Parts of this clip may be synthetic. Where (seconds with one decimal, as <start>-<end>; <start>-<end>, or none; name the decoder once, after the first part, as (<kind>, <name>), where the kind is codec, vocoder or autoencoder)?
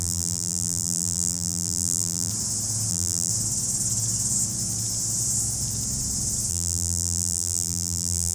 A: 0.0-2.3 (vocoder, BigVGAN v2); 2.9-3.3; 6.5-8.3